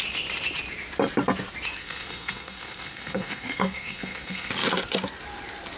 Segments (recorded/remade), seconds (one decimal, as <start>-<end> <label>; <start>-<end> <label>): 0.0-1.8 recorded; 1.8-4.5 remade; 4.5-5.8 recorded